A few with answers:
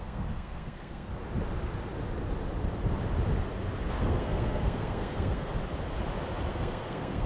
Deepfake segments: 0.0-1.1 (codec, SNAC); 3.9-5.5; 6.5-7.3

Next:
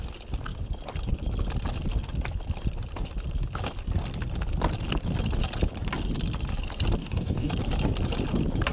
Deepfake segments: 7.0-7.5 (codec, DAC)

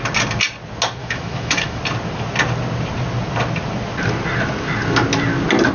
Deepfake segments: 1.0-1.8 (autoencoder, DAC-VAE)

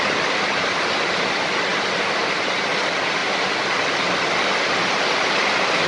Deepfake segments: none

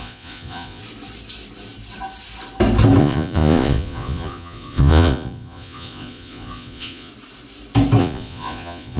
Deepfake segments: 0.0-0.8 (vocoder, Vocos); 3.0-7.1; 8.0-9.0

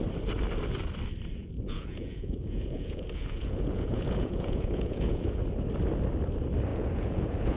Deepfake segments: 1.4-5.4 (vocoder, Vocos); 6.7-7.6

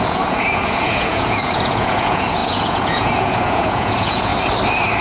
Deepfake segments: 0.0-4.3 (vocoder, Vocos)

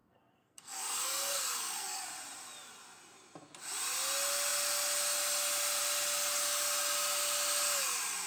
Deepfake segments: 0.0-2.0 (codec, SNAC)